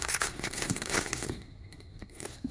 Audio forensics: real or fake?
fake